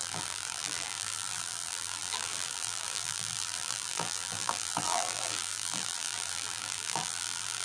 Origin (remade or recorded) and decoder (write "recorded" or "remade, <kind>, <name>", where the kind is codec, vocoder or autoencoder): remade, vocoder, BigVGAN v2